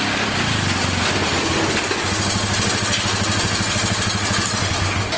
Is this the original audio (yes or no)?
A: yes